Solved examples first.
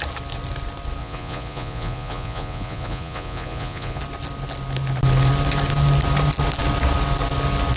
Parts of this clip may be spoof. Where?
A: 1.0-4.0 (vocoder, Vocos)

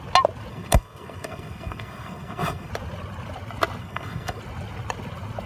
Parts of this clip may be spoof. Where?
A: 0.5-2.7 (codec, SNAC); 3.8-4.4

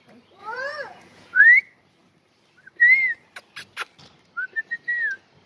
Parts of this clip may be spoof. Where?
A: 0.4-1.4 (vocoder, Vocos)

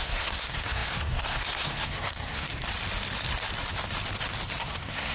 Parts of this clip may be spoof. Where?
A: 0.0-2.5 (codec, SNAC); 4.6-5.1